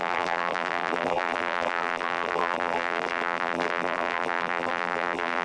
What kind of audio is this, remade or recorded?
remade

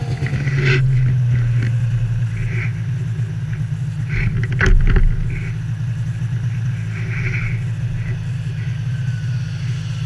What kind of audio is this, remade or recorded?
recorded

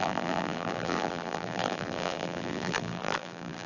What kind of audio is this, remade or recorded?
remade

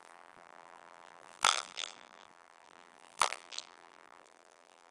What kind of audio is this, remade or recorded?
remade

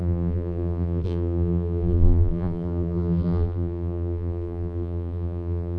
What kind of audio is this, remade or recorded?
remade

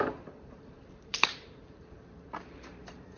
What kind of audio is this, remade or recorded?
remade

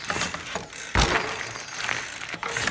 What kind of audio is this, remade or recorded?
recorded